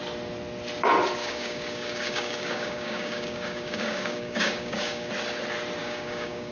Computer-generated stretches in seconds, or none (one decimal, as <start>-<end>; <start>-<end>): 1.2-5.1; 5.8-6.5